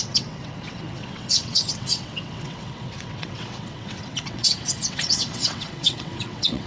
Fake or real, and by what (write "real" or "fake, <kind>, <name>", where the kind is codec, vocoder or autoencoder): fake, vocoder, WaveNeXt